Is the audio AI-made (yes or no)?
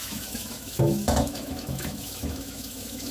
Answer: yes